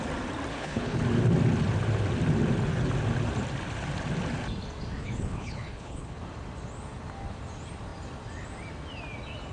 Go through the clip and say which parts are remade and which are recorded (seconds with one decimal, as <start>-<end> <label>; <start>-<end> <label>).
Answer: 0.0-0.5 recorded; 0.5-1.0 remade; 1.0-5.0 recorded; 5.0-6.2 remade; 6.2-9.5 recorded